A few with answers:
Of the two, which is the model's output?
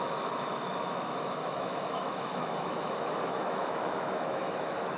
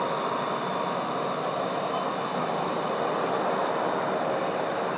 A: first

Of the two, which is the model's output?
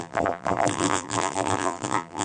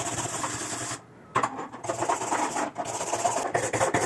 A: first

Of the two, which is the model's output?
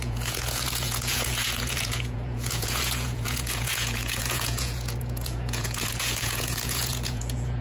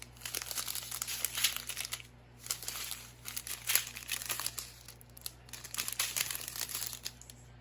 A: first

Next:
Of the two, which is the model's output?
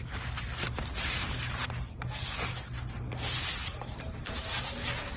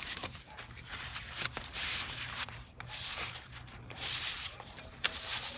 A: second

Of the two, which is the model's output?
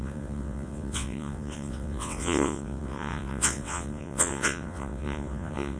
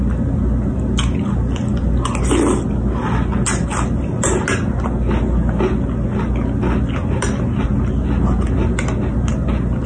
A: first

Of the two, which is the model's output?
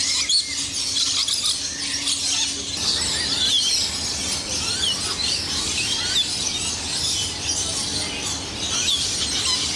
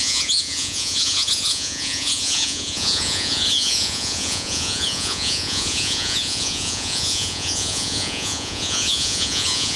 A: second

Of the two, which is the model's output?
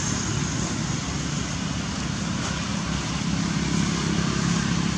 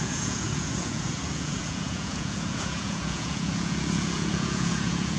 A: second